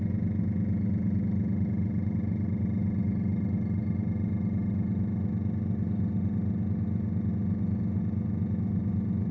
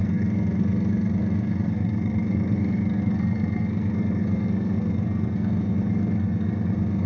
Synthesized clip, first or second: second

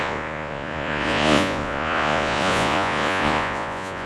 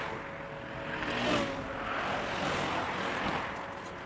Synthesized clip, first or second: first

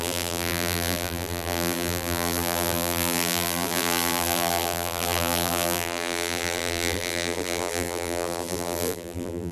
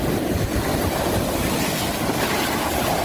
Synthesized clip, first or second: first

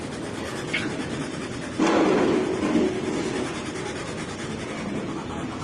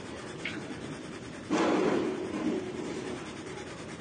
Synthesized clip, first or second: second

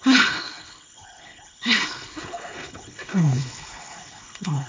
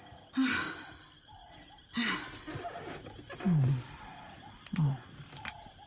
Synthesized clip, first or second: first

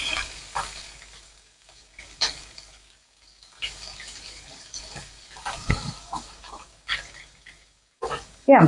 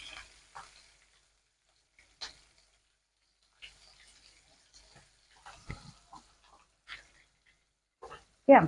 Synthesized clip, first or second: first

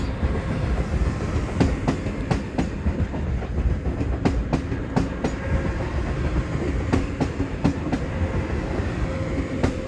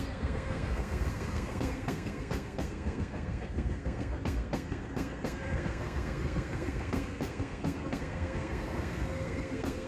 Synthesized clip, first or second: second